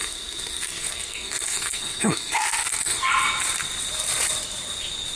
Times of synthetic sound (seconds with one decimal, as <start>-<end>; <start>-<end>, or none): 0.0-3.1